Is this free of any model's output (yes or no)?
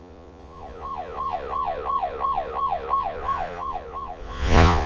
no